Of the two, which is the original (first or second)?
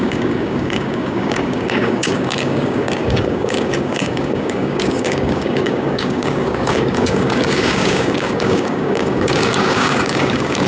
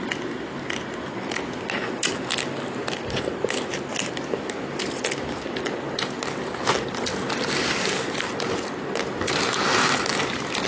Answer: second